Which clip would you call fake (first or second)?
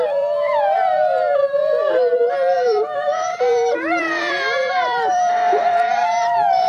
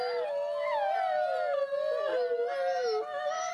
first